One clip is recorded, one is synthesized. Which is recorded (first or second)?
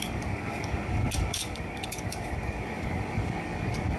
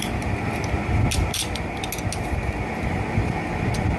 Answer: second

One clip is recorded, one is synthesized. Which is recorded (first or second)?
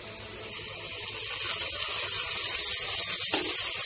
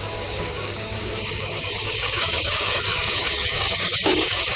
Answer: first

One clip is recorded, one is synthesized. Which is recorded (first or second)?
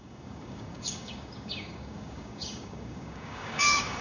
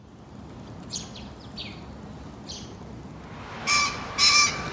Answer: second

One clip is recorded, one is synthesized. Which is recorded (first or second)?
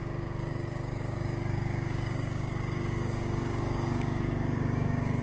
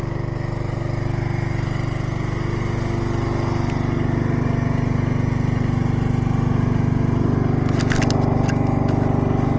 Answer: second